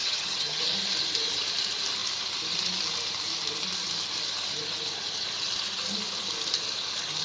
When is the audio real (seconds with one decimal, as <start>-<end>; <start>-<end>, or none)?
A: 0.6-7.2